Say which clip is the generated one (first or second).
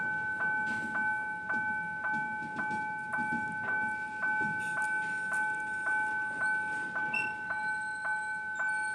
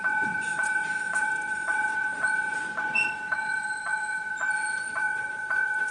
second